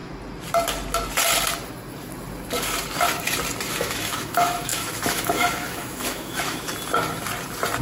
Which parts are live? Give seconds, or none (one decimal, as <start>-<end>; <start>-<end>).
0.0-3.7; 6.7-7.8